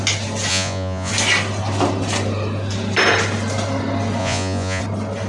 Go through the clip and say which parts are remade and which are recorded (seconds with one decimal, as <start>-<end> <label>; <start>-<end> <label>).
0.0-0.5 recorded; 0.5-1.1 remade; 1.1-4.2 recorded; 4.2-4.8 remade; 4.8-5.3 recorded